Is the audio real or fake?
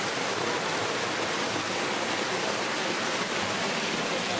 real